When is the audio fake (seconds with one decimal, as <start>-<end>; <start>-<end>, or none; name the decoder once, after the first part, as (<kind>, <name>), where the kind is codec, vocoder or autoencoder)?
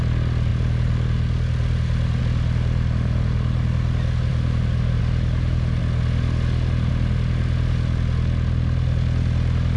none